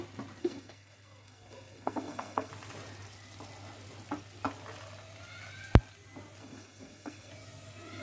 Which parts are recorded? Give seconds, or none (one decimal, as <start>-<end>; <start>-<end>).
0.0-0.4; 2.5-6.4; 7.3-8.0